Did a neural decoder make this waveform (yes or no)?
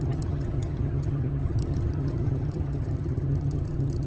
yes